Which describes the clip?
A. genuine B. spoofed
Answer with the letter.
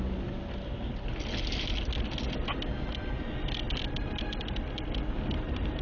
A